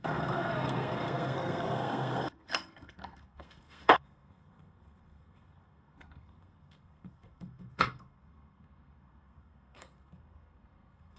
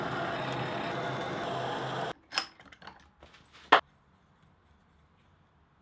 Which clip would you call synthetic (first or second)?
first